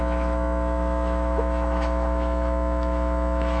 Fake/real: fake